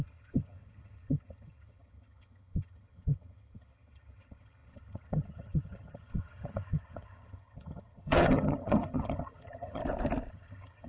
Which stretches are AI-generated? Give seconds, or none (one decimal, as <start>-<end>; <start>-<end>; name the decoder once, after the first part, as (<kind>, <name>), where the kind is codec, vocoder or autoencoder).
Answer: 0.0-9.8 (vocoder, HiFi-GAN); 10.3-10.9